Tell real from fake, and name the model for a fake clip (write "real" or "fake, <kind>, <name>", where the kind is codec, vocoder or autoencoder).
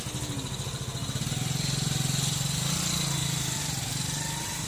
real